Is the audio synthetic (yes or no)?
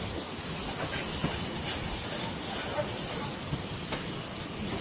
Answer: no